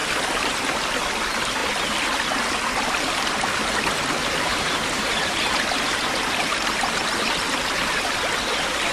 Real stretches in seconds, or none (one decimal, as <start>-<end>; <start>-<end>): 0.0-4.5; 5.5-8.9